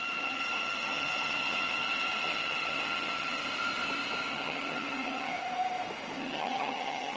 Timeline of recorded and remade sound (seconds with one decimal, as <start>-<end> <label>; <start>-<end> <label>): 0.0-3.4 remade; 3.4-4.3 recorded; 4.3-5.3 remade; 5.3-6.2 recorded; 6.2-7.2 remade